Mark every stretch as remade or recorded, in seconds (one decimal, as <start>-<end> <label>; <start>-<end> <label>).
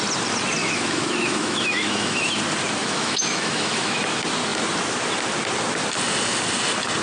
0.0-0.6 recorded; 0.6-2.4 remade; 2.4-2.8 recorded; 2.8-4.0 remade; 4.0-7.0 recorded